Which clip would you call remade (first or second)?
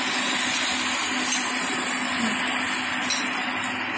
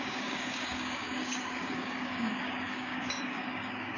second